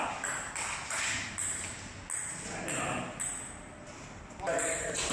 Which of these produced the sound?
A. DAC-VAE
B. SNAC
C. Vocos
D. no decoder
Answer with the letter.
D